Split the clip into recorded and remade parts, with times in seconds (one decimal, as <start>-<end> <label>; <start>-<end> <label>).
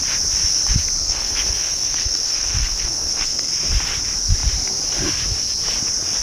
0.0-1.0 recorded; 1.0-3.5 remade; 3.5-6.2 recorded